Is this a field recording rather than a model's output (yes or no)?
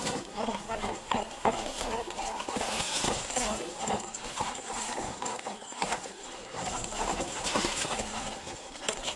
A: no